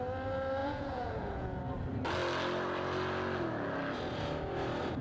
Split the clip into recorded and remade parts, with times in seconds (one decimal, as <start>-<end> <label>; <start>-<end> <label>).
0.0-0.6 recorded; 0.6-1.6 remade; 1.6-5.0 recorded